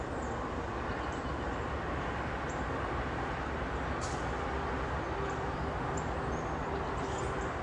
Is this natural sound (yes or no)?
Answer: yes